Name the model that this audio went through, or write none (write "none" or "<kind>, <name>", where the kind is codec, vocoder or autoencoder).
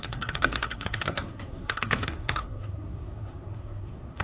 codec, SNAC